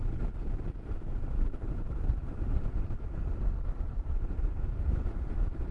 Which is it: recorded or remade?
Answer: remade